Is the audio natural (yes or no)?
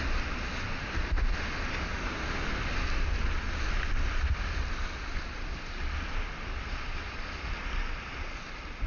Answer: yes